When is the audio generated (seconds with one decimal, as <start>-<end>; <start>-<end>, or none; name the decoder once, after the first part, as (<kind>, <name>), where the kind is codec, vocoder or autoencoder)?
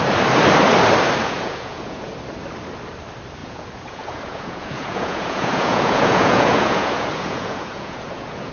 1.2-2.1 (vocoder, Vocos); 3.4-8.5